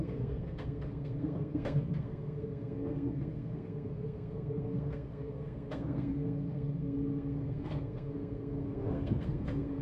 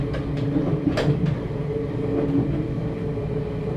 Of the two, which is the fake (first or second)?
first